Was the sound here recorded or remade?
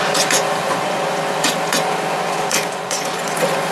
remade